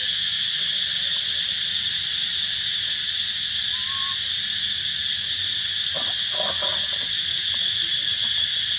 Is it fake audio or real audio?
real